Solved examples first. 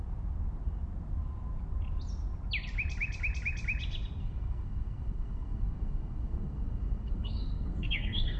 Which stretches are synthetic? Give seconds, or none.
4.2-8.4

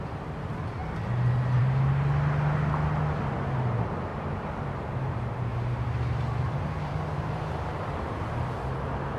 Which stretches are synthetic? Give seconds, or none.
4.1-8.2